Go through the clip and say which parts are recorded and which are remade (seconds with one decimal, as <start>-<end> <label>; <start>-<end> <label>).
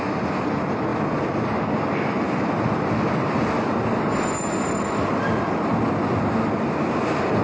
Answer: 0.0-7.4 recorded